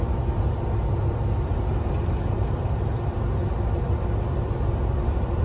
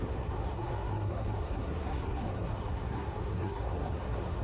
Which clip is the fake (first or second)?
second